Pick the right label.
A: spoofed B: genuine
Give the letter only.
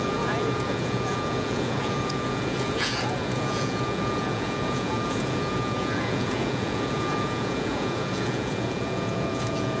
A